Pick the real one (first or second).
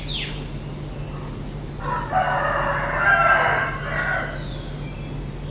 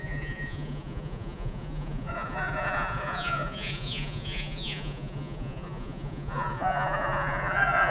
first